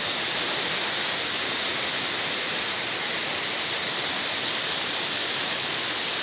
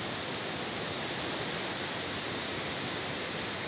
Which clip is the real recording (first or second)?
first